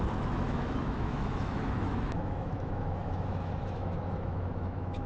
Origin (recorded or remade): remade